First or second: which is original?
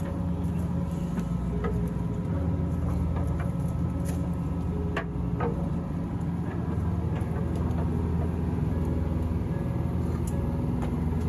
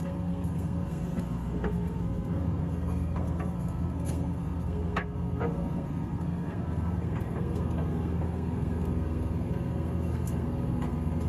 first